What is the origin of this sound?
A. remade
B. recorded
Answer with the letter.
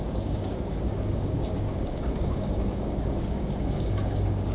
A